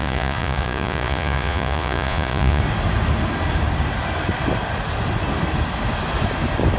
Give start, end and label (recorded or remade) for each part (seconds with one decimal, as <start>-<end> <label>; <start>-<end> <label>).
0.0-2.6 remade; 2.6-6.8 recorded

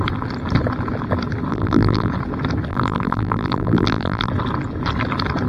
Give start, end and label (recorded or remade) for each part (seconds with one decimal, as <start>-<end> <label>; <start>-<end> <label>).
0.0-1.5 recorded; 1.5-2.1 remade; 2.1-2.7 recorded; 2.7-4.3 remade; 4.3-5.5 recorded

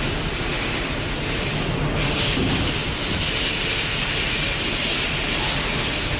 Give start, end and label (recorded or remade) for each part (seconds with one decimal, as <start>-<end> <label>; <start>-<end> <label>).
0.0-6.2 recorded